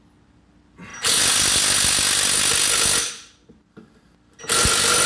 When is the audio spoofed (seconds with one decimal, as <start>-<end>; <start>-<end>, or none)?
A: none